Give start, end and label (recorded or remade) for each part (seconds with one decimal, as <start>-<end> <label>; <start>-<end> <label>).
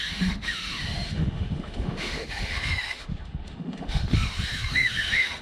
0.0-5.4 remade